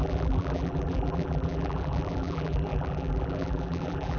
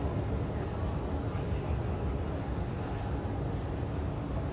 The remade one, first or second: first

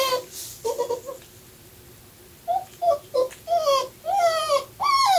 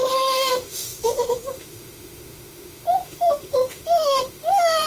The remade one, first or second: second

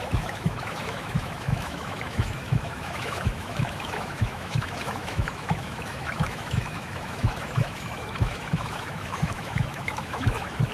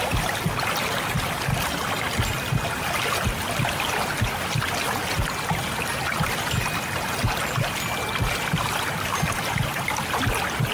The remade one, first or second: first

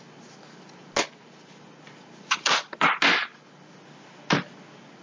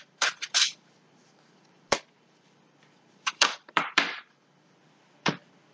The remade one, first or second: second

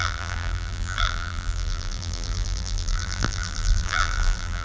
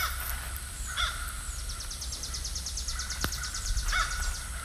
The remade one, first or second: first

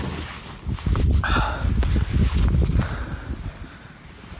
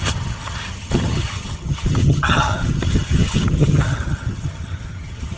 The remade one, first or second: second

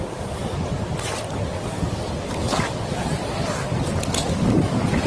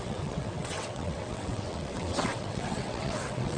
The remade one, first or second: second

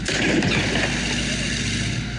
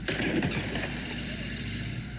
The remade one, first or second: second